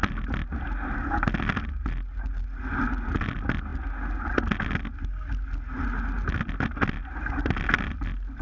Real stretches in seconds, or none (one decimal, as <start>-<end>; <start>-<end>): 0.0-8.4